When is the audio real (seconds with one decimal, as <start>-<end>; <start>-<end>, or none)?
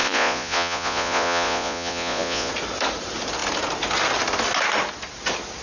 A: 2.5-5.6